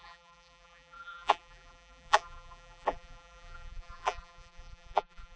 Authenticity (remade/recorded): remade